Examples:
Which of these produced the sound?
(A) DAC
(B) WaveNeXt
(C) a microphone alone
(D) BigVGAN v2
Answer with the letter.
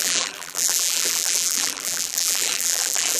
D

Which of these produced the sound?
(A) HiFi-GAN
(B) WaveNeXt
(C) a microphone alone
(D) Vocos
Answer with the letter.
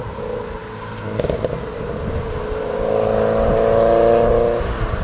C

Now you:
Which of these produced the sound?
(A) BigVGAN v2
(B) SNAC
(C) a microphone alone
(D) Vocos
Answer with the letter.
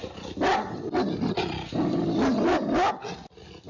C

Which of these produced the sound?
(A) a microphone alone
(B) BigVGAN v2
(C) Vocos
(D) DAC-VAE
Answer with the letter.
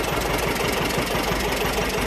A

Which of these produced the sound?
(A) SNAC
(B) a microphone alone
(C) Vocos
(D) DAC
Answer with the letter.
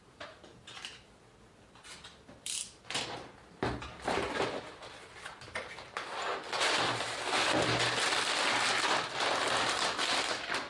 B